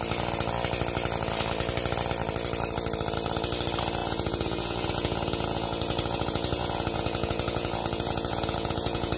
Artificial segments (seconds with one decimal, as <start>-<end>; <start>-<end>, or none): 4.0-9.2